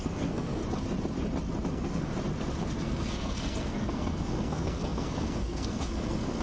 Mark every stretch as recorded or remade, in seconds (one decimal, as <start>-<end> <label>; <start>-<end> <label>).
0.0-0.6 remade; 0.6-1.7 recorded; 1.7-2.1 remade; 2.1-2.8 recorded; 2.8-6.4 remade